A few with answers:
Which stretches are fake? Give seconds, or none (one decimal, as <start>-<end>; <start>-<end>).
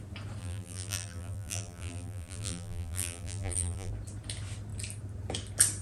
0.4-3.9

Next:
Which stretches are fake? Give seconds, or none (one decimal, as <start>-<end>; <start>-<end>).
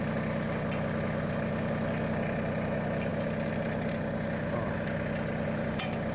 none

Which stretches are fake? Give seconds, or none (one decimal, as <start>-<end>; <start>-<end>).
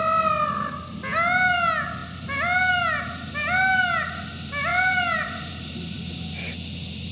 4.7-6.1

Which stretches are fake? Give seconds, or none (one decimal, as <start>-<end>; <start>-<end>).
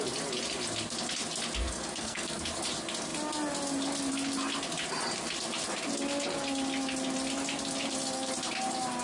1.6-2.4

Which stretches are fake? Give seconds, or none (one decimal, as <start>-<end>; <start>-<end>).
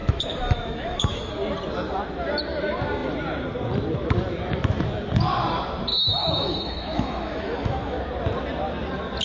0.0-1.3; 5.9-8.0